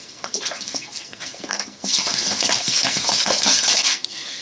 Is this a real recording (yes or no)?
no